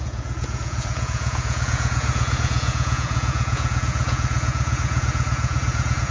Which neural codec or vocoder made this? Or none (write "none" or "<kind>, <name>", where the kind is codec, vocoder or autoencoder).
vocoder, Vocos